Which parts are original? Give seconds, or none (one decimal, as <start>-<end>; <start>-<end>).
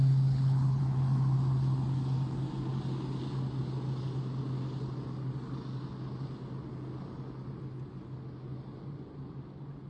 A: 0.8-9.9